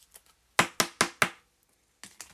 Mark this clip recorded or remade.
recorded